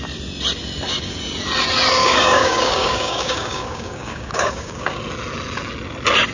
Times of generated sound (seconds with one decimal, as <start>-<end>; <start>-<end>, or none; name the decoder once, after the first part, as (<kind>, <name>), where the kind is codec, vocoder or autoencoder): 2.0-5.0 (codec, DAC)